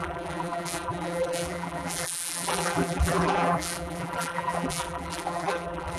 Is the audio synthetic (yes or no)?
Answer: yes